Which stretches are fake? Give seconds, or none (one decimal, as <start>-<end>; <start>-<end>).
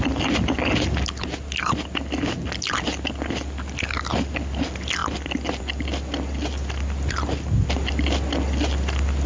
none